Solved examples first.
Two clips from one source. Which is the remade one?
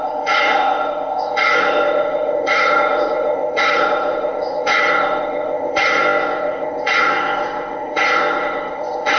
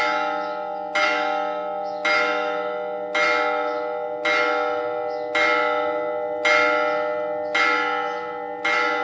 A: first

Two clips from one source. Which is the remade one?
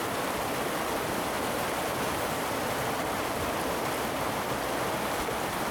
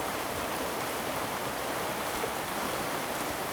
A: second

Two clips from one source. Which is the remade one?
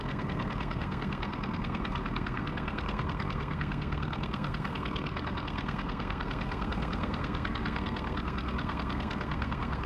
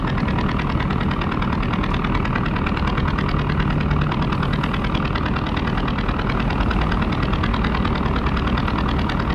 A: first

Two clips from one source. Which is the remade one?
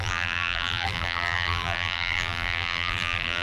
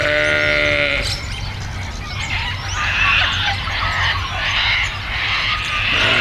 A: first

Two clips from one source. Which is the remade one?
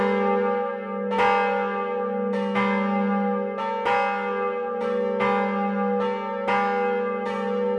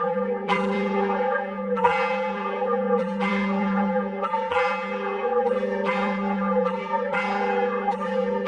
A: second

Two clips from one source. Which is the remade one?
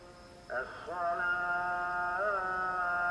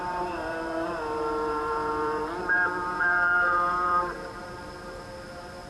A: second